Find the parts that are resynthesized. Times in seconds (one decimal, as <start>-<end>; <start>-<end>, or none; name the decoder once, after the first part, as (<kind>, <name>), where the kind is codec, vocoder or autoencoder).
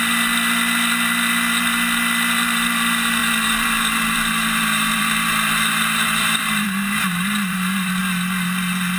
3.2-8.0 (vocoder, BigVGAN v2)